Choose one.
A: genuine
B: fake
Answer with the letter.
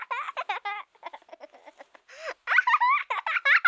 A